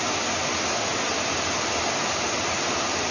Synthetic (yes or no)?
no